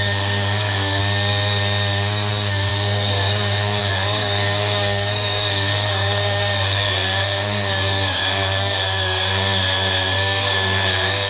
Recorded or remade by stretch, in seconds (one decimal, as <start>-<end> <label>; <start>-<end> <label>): 0.0-1.0 remade; 1.0-2.3 recorded; 2.3-11.3 remade